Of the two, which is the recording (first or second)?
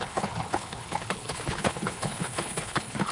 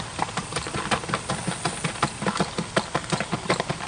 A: second